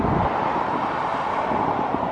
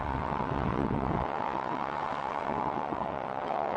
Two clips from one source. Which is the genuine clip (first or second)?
first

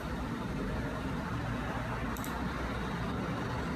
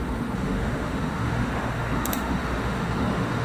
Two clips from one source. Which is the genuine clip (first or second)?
first